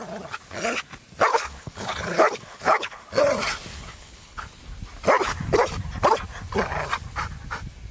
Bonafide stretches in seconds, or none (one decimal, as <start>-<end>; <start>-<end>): 0.0-1.3; 3.0-3.7; 4.6-7.9

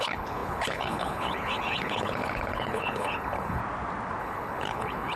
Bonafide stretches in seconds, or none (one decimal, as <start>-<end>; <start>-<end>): 3.6-4.2

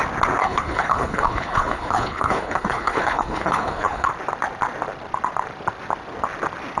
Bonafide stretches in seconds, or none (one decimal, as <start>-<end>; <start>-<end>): 0.0-0.4; 4.1-6.8